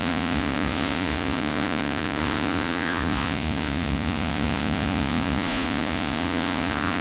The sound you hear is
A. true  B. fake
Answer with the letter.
B